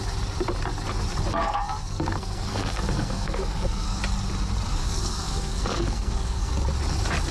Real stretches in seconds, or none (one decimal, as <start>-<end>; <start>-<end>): 0.0-1.4; 4.0-4.8; 6.5-7.3